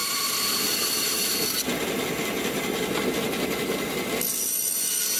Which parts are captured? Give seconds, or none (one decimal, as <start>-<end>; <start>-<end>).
0.0-5.2